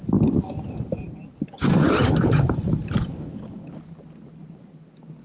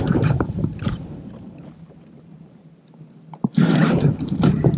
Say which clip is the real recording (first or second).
first